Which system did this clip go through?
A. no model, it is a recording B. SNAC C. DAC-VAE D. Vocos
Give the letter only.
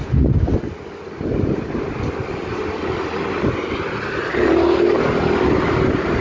A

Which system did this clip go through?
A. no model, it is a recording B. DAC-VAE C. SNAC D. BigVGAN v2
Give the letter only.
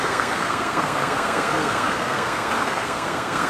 C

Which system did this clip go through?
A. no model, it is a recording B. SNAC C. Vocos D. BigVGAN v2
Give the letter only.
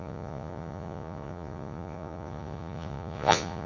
C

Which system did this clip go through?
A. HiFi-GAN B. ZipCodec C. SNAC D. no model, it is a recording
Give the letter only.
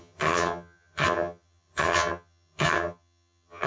A